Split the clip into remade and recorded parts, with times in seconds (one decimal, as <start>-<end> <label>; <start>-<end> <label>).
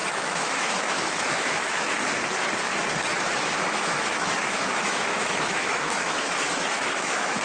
0.0-2.0 remade; 2.0-3.1 recorded; 3.1-7.4 remade